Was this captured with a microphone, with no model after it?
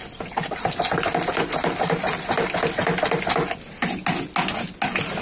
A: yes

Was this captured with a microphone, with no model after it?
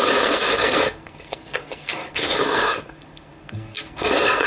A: no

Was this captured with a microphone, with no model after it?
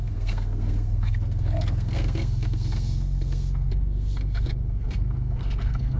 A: no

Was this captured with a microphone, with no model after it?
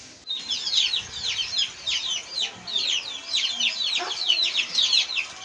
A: yes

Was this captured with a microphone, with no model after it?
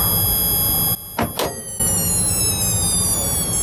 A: yes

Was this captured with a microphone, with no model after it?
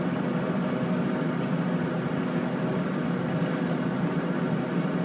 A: yes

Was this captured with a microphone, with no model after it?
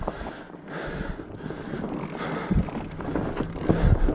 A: yes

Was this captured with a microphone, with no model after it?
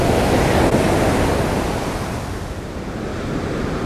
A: yes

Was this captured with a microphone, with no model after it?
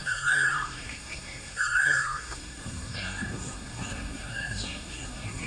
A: no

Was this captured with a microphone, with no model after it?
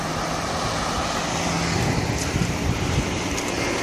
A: yes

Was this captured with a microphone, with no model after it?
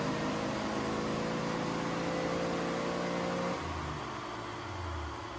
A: yes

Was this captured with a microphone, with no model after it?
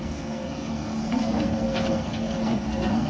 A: no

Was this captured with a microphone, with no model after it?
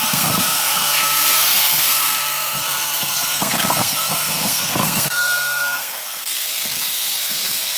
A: no